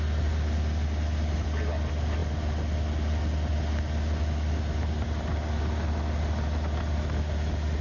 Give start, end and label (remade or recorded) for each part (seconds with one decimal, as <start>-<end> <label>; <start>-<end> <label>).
0.0-7.8 recorded